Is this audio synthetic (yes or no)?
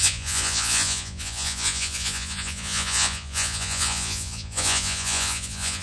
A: yes